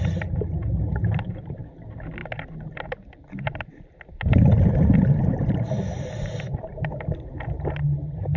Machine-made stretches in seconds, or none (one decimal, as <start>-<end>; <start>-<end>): none